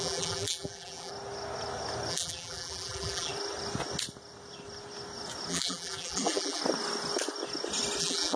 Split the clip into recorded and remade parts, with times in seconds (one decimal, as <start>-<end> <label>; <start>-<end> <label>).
0.0-1.1 remade; 1.1-2.1 recorded; 2.1-3.3 remade; 3.3-5.5 recorded; 5.5-6.6 remade; 6.6-8.0 recorded; 8.0-8.4 remade